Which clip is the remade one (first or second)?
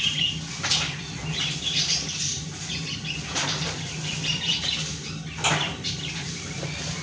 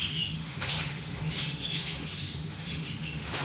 second